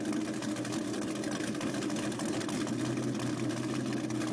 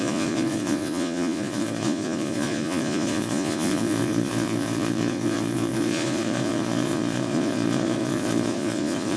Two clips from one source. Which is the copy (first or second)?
second